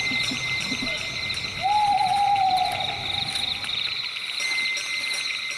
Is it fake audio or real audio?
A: real